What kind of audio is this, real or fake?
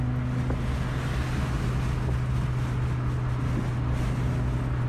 real